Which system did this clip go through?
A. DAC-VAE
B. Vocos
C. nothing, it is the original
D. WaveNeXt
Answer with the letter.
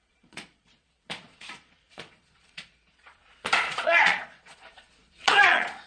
B